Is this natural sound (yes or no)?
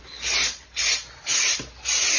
yes